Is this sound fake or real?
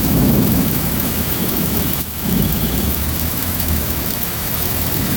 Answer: fake